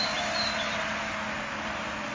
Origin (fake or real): real